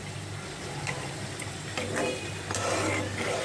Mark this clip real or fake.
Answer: real